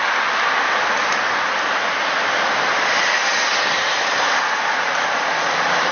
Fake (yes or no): yes